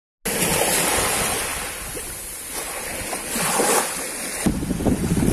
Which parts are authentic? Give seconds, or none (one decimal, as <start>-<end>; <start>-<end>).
0.0-5.3